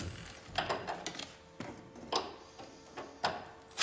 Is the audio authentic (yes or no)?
yes